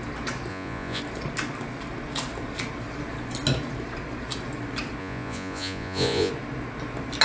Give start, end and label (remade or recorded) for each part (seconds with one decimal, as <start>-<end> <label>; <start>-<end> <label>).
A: 0.0-0.5 recorded; 0.5-1.0 remade; 1.0-5.0 recorded; 5.0-6.3 remade; 6.3-7.2 recorded